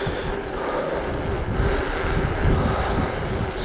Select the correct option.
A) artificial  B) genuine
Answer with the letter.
B